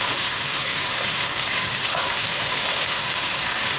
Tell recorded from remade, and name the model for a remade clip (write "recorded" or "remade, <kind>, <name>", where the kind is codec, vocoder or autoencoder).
remade, autoencoder, DAC-VAE